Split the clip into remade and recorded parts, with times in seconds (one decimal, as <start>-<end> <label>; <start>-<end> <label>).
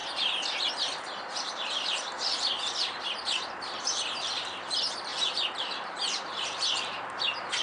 0.0-1.3 recorded; 1.3-7.6 remade